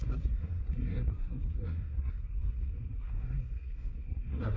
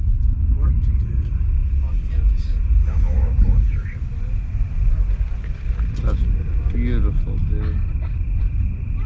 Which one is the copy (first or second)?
first